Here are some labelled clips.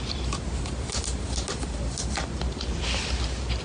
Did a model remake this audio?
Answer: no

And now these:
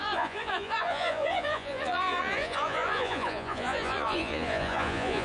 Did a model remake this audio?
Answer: yes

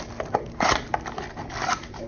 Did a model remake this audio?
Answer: no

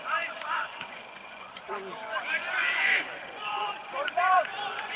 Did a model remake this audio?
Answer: yes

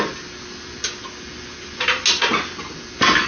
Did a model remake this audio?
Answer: no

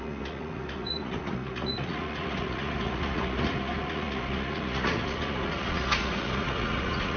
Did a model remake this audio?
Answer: yes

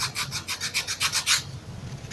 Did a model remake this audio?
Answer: no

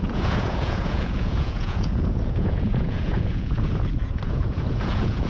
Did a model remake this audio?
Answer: yes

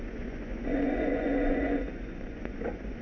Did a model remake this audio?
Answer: yes